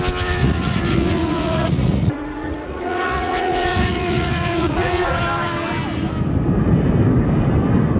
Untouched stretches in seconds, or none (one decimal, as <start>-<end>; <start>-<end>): 0.0-0.4; 5.2-8.0